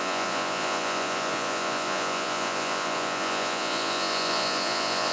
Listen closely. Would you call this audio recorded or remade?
remade